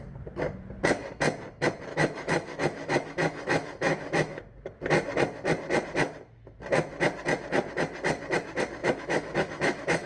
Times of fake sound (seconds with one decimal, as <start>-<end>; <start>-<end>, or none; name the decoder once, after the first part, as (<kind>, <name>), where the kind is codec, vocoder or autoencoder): 1.9-4.4 (autoencoder, DAC-VAE); 8.8-10.1